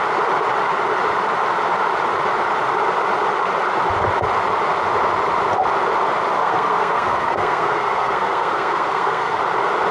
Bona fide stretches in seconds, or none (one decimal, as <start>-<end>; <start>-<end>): 0.0-6.4; 9.4-9.9